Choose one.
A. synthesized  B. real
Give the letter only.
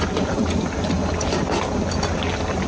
B